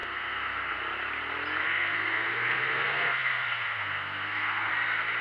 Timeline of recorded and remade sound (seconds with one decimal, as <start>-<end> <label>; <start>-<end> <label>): 0.0-0.8 remade; 0.8-1.6 recorded; 1.6-4.7 remade; 4.7-5.2 recorded